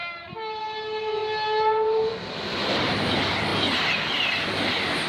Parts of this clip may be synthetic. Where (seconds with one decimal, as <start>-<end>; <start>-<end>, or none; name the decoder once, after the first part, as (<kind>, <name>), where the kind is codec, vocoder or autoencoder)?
0.0-0.6 (vocoder, BigVGAN v2); 1.2-2.1; 2.5-3.1